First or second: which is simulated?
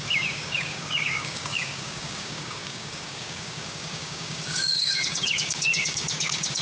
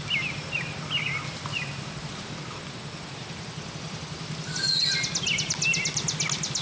first